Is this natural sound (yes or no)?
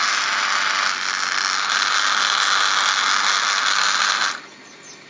yes